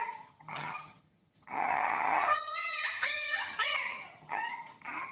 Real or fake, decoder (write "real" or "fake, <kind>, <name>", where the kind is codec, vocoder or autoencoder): fake, vocoder, HiFi-GAN